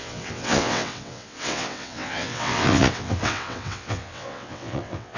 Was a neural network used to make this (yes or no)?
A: yes